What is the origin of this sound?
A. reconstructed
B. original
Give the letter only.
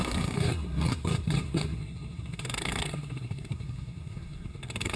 A